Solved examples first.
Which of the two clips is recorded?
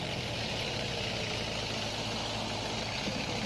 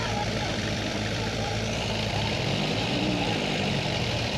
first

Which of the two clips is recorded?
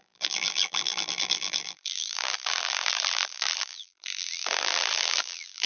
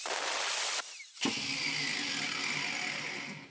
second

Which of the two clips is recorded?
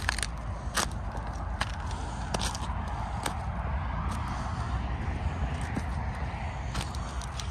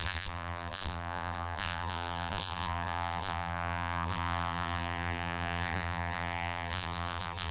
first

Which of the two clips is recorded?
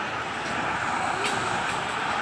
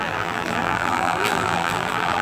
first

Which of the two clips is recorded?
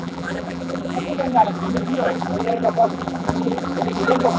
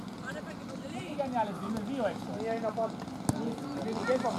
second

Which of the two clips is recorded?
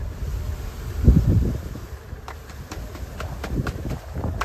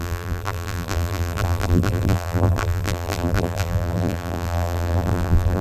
first